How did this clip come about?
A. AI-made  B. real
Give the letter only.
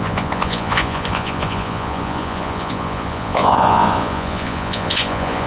A